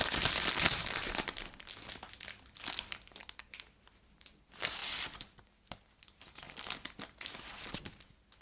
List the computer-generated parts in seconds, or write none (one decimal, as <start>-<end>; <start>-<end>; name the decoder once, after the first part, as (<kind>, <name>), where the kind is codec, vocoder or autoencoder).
none